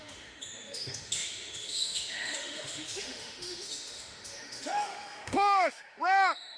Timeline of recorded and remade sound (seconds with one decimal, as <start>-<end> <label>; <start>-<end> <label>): 0.0-6.6 remade